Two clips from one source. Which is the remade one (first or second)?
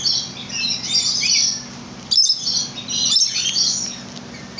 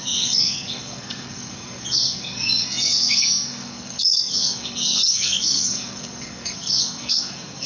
second